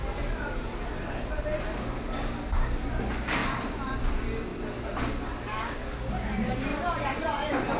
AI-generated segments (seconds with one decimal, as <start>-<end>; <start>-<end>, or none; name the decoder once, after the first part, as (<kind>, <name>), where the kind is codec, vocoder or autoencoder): 0.0-1.4 (vocoder, BigVGAN v2); 3.4-4.1; 6.7-7.8